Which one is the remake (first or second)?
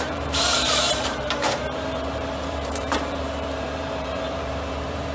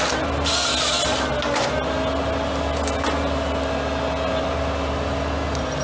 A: first